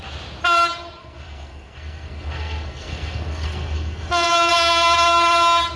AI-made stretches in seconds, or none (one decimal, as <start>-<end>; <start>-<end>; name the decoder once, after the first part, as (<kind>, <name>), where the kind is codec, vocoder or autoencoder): 1.0-4.5 (codec, SNAC)